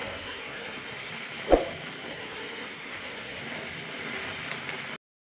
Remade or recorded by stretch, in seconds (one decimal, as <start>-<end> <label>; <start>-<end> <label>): 0.0-1.1 remade; 1.1-2.1 recorded; 2.1-3.4 remade; 3.4-5.4 recorded